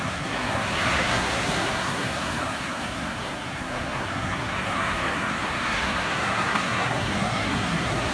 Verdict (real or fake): fake